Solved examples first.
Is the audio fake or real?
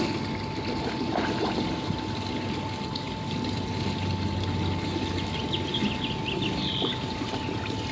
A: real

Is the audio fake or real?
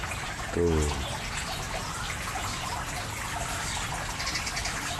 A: real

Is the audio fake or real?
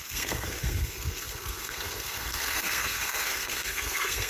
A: fake